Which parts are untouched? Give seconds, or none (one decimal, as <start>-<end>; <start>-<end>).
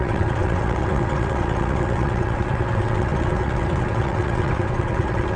none